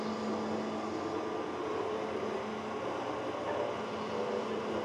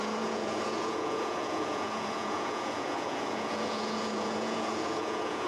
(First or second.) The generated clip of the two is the second